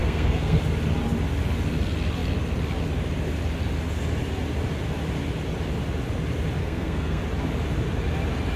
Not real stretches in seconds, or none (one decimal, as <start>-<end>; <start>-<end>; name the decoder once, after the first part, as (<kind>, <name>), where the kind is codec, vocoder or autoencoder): 0.0-0.6 (codec, SNAC); 6.6-7.2